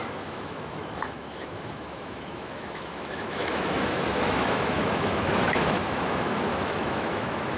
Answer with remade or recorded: remade